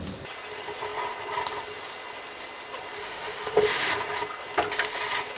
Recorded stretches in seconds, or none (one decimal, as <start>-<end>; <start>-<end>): 0.0-3.0; 4.0-5.4